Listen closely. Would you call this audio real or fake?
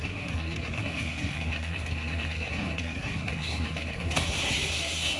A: fake